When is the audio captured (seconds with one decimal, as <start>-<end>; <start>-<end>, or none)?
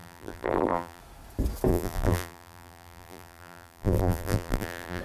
1.0-1.7